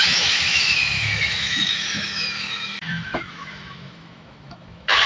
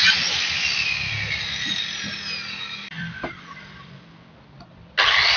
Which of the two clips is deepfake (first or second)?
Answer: first